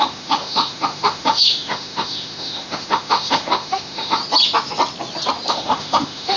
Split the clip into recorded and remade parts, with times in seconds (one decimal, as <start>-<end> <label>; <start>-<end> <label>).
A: 0.0-4.2 remade; 4.2-5.5 recorded; 5.5-6.4 remade